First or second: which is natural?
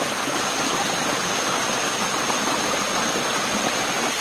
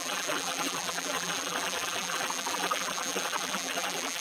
first